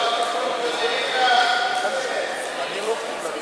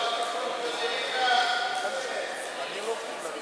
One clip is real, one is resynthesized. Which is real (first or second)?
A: second